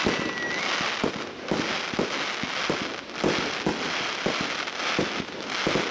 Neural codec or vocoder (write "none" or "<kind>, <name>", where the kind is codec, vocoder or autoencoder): none